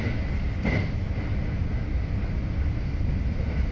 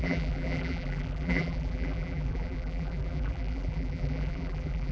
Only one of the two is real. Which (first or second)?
first